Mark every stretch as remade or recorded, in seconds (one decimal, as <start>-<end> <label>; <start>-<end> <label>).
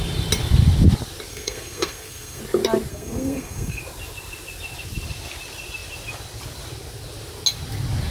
0.0-1.3 recorded; 1.3-2.4 remade; 2.4-2.9 recorded; 2.9-3.8 remade; 3.8-8.1 recorded